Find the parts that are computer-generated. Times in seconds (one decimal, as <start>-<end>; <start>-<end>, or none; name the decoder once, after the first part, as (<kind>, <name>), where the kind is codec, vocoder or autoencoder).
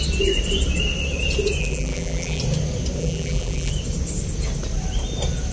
1.6-2.4 (vocoder, BigVGAN v2); 3.0-3.7